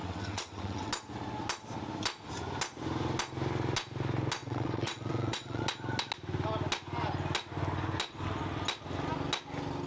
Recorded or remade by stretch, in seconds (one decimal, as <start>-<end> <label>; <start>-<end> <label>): 0.0-0.9 remade; 0.9-4.4 recorded; 4.4-5.6 remade; 5.6-9.9 recorded